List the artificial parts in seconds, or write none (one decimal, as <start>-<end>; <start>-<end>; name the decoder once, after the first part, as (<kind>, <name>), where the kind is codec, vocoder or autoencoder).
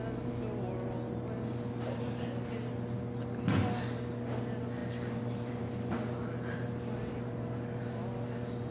4.8-5.6 (vocoder, BigVGAN v2)